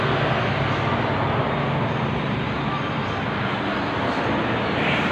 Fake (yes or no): no